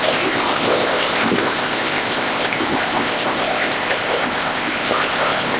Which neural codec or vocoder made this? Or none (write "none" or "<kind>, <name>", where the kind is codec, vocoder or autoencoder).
codec, ZipCodec